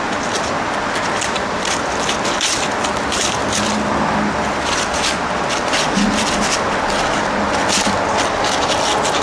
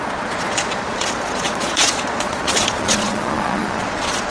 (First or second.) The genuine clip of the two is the first